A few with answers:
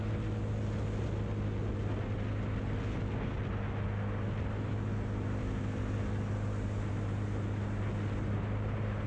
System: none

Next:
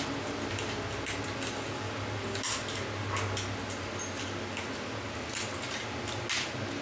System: none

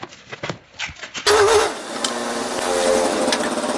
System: none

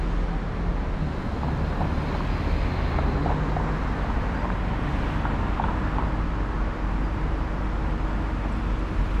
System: none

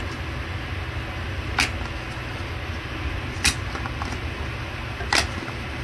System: none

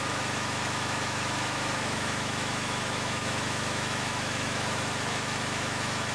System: autoencoder, DAC-VAE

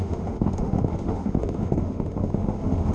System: autoencoder, DAC-VAE